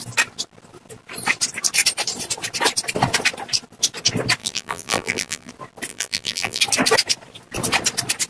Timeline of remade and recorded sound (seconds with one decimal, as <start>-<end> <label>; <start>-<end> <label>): 0.0-4.4 recorded; 4.4-5.5 remade; 5.5-5.9 recorded; 5.9-6.6 remade; 6.6-8.3 recorded